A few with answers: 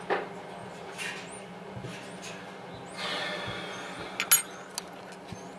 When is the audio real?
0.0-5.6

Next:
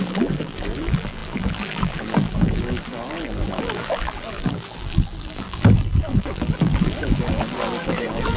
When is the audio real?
none

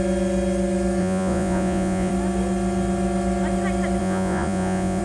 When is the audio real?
0.0-1.0; 2.1-4.0

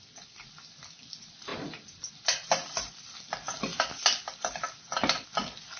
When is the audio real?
0.0-5.8